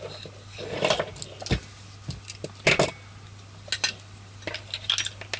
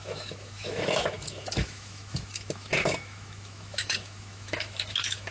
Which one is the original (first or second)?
first